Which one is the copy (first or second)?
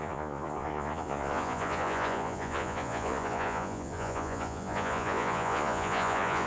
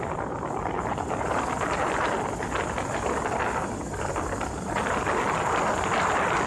first